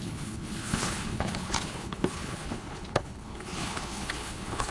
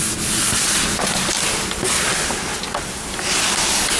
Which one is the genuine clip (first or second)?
second